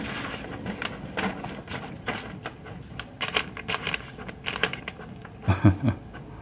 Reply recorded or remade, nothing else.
recorded